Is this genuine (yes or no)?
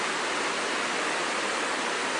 yes